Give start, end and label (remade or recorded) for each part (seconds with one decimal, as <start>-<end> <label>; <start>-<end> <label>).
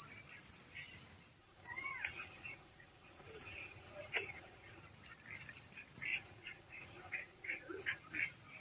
0.0-1.4 recorded; 1.4-4.8 remade; 4.8-6.1 recorded; 6.1-8.0 remade; 8.0-8.6 recorded